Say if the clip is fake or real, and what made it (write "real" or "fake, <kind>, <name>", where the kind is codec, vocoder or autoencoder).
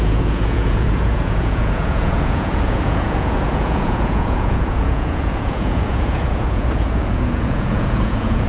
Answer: fake, vocoder, Vocos